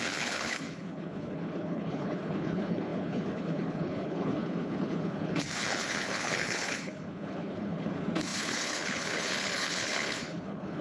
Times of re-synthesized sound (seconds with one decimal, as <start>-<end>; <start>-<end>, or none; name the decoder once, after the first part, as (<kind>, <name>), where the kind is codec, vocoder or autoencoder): 0.0-10.8 (codec, HILCodec)